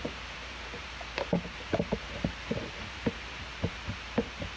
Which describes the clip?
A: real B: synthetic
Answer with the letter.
B